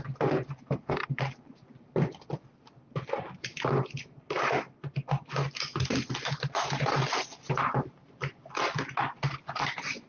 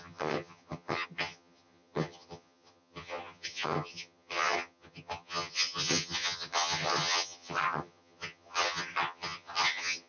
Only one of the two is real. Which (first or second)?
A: first